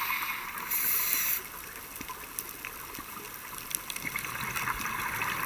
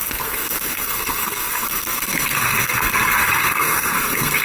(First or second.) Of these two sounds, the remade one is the second